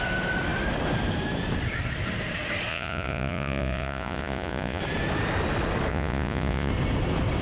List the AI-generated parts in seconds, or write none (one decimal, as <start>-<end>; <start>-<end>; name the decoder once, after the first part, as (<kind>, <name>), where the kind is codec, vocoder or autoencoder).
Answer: 2.7-4.8 (vocoder, Vocos); 5.9-6.7